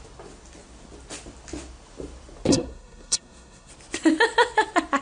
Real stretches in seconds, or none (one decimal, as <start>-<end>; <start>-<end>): 0.0-2.5; 3.7-5.0